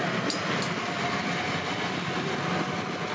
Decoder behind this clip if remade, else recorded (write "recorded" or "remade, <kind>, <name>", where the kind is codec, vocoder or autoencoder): recorded